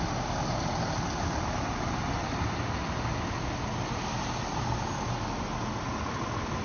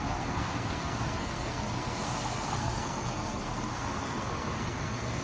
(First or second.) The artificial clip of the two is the second